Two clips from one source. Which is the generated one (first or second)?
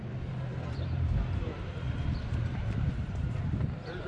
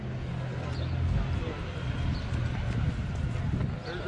first